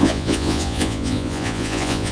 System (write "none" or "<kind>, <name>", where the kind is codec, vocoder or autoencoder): vocoder, Vocos